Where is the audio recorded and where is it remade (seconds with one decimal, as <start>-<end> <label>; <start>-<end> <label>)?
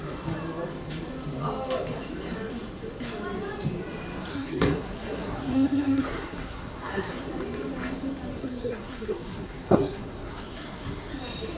0.0-4.3 recorded; 4.3-7.3 remade; 7.3-8.4 recorded; 8.4-11.1 remade; 11.1-11.6 recorded